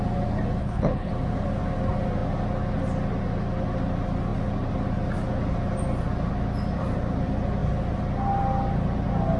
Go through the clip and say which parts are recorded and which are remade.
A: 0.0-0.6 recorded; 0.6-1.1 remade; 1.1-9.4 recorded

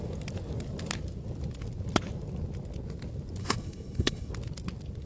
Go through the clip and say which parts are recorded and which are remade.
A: 0.0-3.4 recorded; 3.4-4.3 remade; 4.3-5.1 recorded

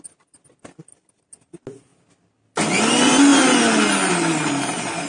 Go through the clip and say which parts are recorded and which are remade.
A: 0.0-5.1 recorded

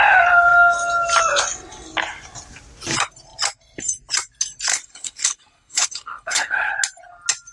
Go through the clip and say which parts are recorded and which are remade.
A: 0.0-4.7 recorded; 4.7-6.7 remade; 6.7-7.5 recorded

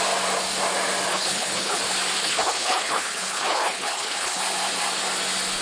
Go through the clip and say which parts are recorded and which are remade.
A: 0.0-1.1 recorded; 1.1-1.8 remade; 1.8-2.2 recorded; 2.2-4.4 remade; 4.4-5.6 recorded